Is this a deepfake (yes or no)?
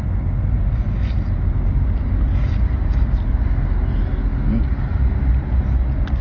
no